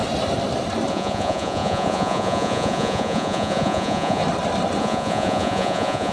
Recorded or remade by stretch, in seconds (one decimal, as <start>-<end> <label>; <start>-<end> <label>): 0.0-0.9 recorded; 0.9-4.2 remade; 4.2-4.8 recorded; 4.8-6.1 remade